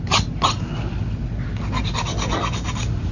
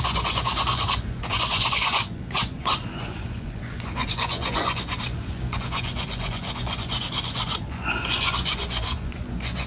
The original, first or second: first